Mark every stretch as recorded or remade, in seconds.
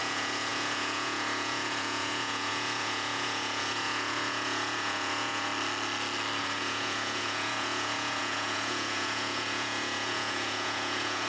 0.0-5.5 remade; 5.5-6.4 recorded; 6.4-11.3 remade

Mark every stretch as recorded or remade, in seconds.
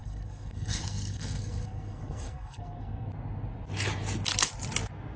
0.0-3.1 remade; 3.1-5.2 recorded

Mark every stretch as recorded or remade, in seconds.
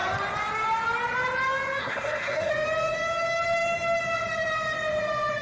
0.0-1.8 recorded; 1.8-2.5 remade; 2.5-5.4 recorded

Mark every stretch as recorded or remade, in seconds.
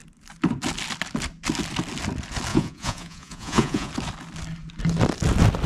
0.0-2.5 recorded; 2.5-3.9 remade; 3.9-5.7 recorded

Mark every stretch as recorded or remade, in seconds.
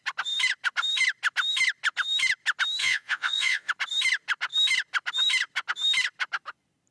0.0-2.8 recorded; 2.8-3.7 remade; 3.7-6.9 recorded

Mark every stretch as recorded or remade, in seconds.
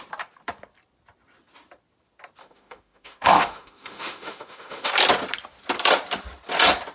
0.0-2.4 recorded; 2.4-4.9 remade; 4.9-6.9 recorded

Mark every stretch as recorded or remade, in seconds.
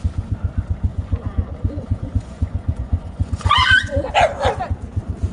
0.0-0.9 recorded; 0.9-4.1 remade; 4.1-5.3 recorded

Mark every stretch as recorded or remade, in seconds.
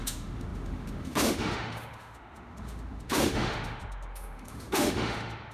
0.0-5.5 remade